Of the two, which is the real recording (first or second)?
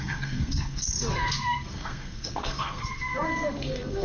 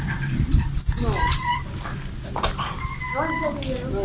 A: second